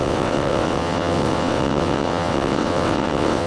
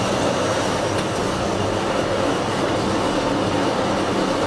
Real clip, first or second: second